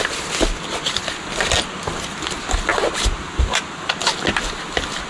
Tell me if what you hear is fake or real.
real